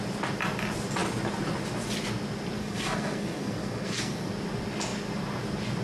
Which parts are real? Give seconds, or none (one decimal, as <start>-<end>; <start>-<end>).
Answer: 0.0-2.6; 4.3-5.8